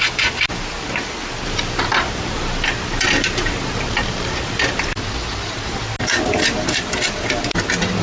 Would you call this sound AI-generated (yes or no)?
no